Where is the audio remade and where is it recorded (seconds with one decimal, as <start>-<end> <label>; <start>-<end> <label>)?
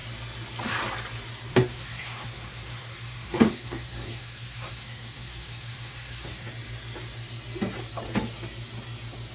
0.0-1.5 recorded; 1.5-6.5 remade; 6.5-9.3 recorded